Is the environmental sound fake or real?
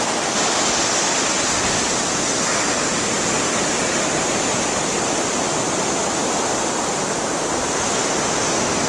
real